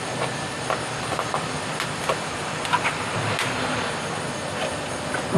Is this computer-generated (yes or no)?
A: no